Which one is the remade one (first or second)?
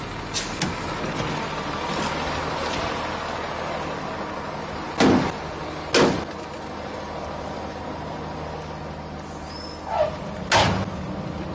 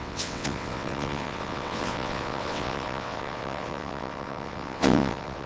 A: second